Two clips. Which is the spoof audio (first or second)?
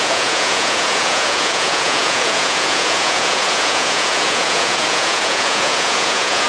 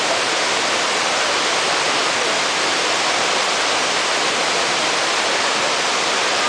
first